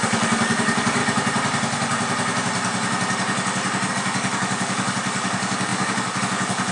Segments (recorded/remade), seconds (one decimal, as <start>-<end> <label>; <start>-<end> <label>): 0.0-1.0 remade; 1.0-3.9 recorded; 3.9-6.7 remade